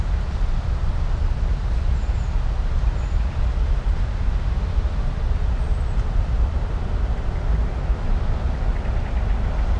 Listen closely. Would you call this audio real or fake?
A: real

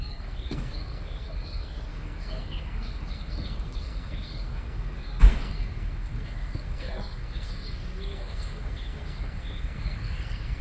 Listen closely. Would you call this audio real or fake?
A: fake